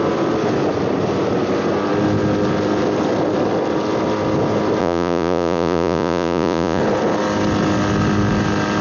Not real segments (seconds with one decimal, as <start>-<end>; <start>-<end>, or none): 4.8-6.8